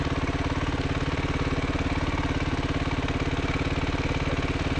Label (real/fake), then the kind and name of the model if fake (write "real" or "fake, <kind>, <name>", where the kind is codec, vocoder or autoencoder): real